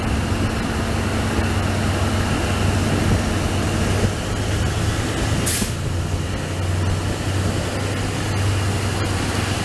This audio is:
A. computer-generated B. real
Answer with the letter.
B